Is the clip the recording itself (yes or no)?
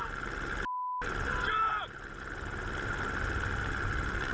yes